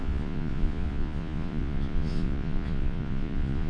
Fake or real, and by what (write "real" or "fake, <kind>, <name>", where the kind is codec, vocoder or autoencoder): fake, vocoder, Vocos